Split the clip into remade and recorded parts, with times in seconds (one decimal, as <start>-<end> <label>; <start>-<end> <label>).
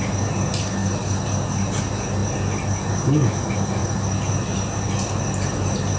0.0-6.0 recorded